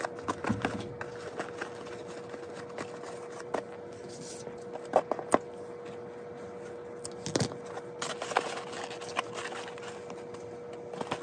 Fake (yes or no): no